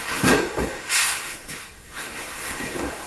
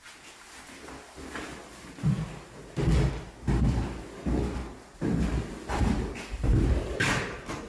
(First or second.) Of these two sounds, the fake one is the first